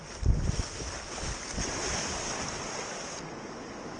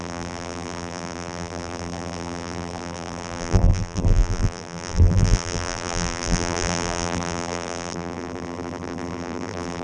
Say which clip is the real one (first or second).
first